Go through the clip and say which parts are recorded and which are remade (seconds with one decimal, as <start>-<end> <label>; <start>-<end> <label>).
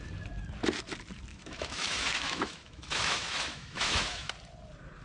0.0-1.3 recorded; 1.3-4.3 remade; 4.3-5.0 recorded